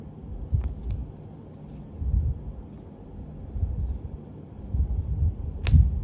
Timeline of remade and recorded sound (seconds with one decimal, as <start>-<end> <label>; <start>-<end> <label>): 0.0-6.0 recorded

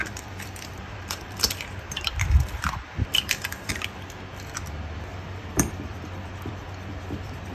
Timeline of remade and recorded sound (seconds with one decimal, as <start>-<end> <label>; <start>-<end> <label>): 0.0-3.7 remade; 3.7-5.1 recorded; 5.1-7.5 remade

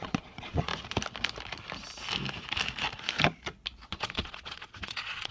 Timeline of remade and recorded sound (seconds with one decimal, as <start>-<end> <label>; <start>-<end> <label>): 0.0-0.7 remade; 0.7-3.9 recorded; 3.9-5.3 remade

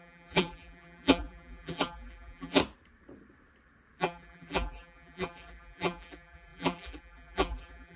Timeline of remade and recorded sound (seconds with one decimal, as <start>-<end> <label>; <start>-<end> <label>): 0.0-2.6 remade; 2.6-4.0 recorded; 4.0-8.0 remade

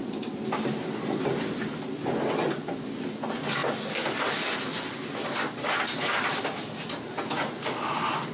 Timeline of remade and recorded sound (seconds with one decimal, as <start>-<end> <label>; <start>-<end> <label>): 0.0-8.3 recorded